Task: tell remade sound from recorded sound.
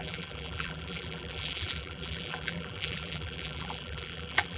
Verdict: remade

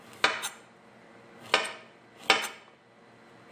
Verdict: recorded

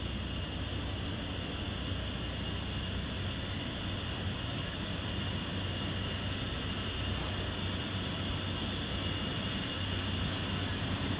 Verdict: recorded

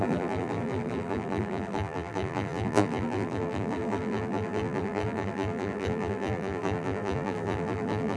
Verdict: remade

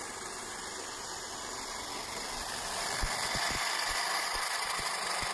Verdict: recorded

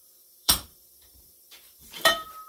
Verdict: remade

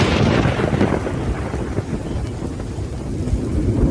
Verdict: recorded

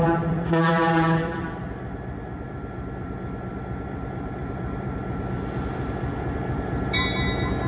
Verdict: remade